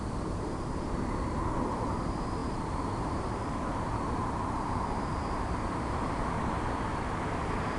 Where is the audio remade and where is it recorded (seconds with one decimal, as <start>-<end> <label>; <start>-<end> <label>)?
0.0-7.8 remade